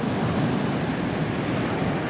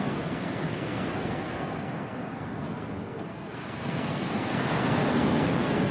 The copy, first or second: second